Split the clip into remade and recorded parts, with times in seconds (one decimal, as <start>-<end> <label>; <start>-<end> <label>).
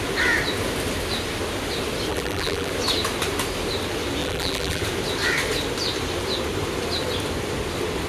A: 0.0-2.1 recorded; 2.1-2.7 remade; 2.7-4.2 recorded; 4.2-4.8 remade; 4.8-8.1 recorded